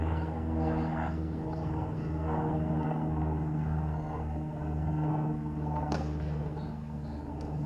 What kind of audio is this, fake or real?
fake